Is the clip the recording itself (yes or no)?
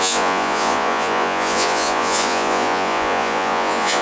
no